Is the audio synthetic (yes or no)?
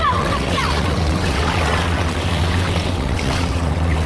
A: yes